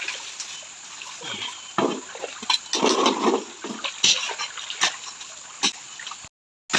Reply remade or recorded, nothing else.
recorded